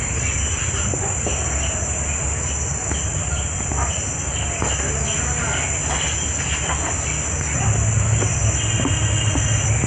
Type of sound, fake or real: real